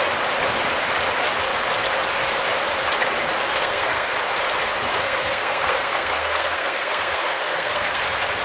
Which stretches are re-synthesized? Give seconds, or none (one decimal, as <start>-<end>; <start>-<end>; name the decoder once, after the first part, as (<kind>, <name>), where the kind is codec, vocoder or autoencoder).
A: 3.5-4.1 (codec, SNAC); 4.9-8.0